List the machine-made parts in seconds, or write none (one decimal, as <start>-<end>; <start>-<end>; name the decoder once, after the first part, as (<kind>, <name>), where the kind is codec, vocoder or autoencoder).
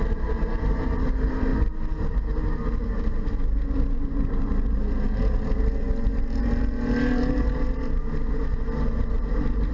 0.0-1.5 (vocoder, BigVGAN v2); 2.8-8.0; 9.1-9.7